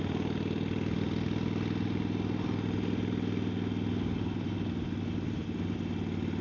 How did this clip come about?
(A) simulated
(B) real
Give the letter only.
B